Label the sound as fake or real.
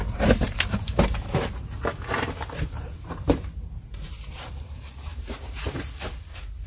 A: fake